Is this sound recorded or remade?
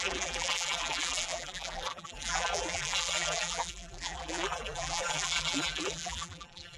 remade